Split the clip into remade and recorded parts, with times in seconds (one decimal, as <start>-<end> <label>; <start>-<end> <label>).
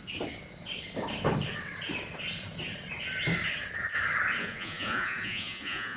0.0-4.4 recorded; 4.4-6.0 remade